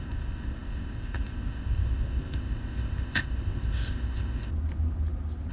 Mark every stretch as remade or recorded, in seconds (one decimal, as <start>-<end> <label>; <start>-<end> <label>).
0.0-4.5 remade; 4.5-5.5 recorded